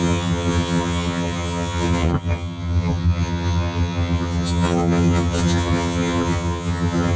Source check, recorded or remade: remade